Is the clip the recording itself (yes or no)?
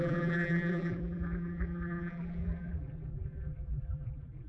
no